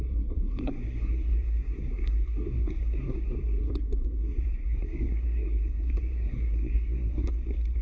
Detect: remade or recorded remade